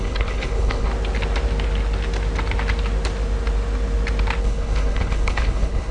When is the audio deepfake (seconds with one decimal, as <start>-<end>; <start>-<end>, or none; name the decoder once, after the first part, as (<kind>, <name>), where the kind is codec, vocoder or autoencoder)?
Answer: 0.0-0.9 (codec, HILCodec); 4.4-5.9